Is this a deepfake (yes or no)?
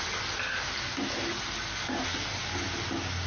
no